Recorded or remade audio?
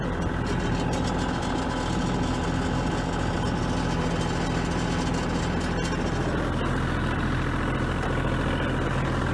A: recorded